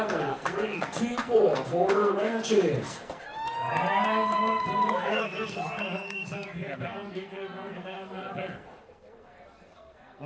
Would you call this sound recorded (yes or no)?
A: no